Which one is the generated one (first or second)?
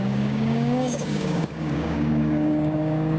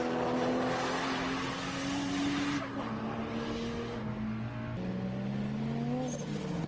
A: first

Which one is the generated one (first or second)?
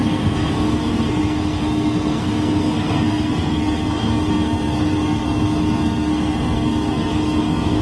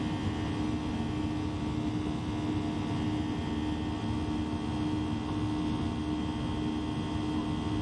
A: first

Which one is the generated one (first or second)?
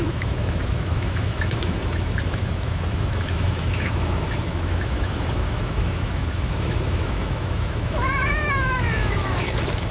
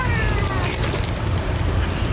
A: first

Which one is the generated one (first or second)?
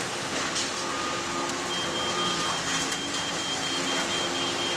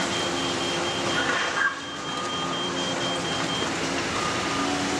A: second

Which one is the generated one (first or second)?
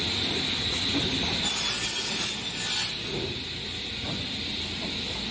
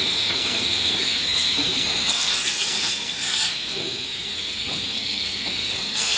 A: second